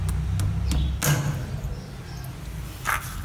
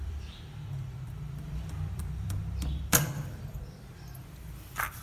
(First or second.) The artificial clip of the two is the second